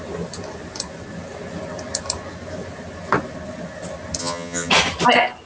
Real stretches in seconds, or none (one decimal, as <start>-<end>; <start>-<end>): 0.0-4.2; 4.7-5.5